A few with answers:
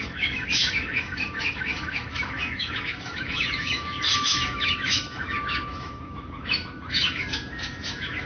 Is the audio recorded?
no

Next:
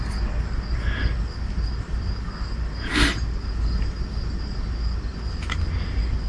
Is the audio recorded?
yes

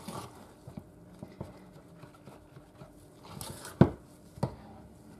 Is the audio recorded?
yes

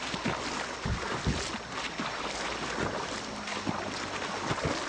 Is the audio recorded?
yes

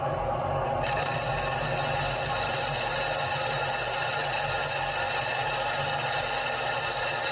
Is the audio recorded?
yes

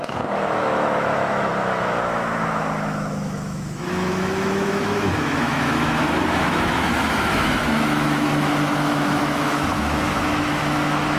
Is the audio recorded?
no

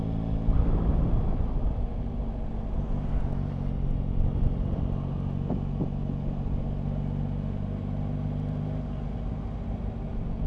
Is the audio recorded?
yes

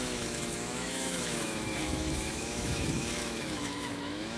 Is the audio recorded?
no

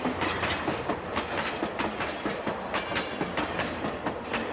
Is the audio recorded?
yes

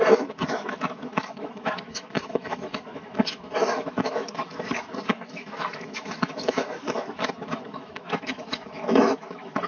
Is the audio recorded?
no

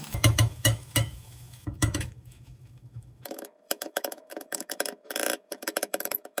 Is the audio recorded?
no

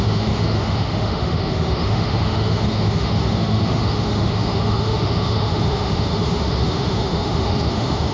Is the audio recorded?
no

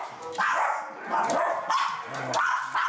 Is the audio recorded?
yes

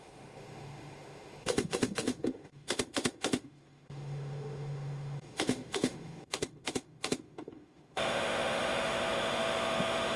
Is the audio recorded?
no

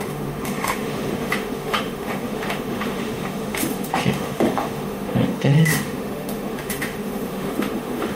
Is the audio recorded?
no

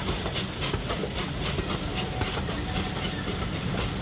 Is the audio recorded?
yes